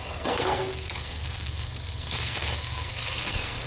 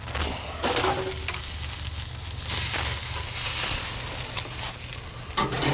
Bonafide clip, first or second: second